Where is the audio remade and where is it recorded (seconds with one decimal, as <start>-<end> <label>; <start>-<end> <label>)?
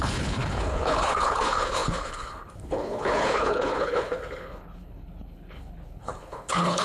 0.0-6.8 remade